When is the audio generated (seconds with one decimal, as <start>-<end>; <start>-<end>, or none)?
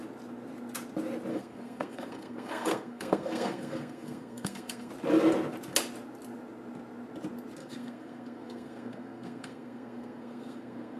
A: 1.3-4.9; 7.6-11.0